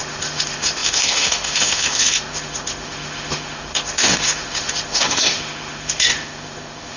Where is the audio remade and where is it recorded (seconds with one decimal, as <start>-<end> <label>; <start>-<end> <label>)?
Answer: 0.0-7.0 remade